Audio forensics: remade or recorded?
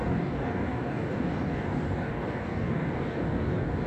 remade